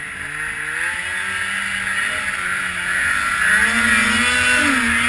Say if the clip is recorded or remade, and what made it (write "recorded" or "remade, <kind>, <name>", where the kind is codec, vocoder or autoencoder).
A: recorded